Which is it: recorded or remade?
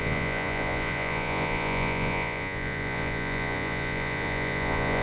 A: remade